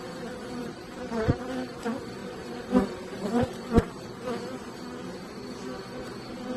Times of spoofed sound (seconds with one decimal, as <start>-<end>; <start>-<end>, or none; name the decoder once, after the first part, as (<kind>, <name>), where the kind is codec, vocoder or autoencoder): 0.6-1.4 (vocoder, BigVGAN v2); 2.2-4.3